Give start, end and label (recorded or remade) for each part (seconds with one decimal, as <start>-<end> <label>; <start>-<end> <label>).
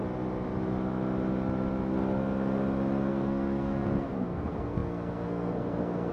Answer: 0.0-3.1 recorded; 3.1-6.1 remade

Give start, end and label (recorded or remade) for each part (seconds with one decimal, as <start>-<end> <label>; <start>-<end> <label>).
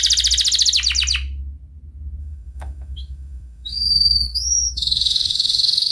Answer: 0.0-2.2 recorded; 2.2-5.9 remade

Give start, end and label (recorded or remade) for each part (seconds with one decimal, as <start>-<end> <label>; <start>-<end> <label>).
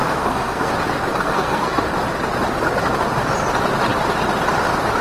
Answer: 0.0-0.7 remade; 0.7-1.1 recorded; 1.1-1.8 remade; 1.8-5.0 recorded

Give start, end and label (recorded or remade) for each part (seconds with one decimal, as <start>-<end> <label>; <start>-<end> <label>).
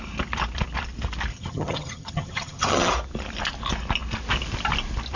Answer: 0.0-1.3 recorded; 1.3-2.9 remade; 2.9-5.2 recorded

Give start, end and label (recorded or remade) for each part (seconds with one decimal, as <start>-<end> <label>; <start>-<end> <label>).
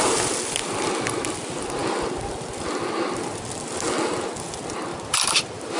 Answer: 0.0-4.9 recorded; 4.9-5.8 remade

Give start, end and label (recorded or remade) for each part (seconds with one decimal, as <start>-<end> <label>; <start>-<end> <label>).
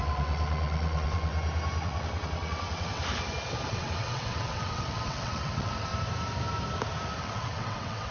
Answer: 0.0-1.3 remade; 1.3-1.8 recorded; 1.8-3.0 remade; 3.0-3.7 recorded; 3.7-5.9 remade; 5.9-7.2 recorded; 7.2-8.1 remade